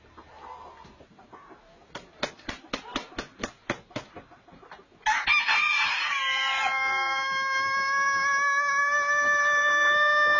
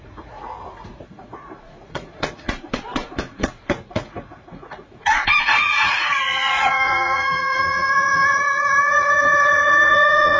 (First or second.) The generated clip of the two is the second